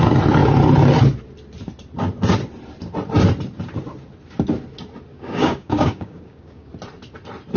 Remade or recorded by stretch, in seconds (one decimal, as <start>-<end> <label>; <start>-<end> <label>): 0.0-5.1 recorded; 5.1-6.7 remade; 6.7-7.6 recorded